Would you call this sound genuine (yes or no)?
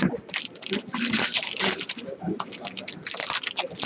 no